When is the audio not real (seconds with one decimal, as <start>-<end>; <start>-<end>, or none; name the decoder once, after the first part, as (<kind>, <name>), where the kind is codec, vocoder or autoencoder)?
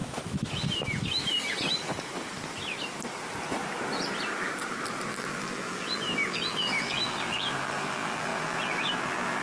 5.1-9.4 (vocoder, BigVGAN v2)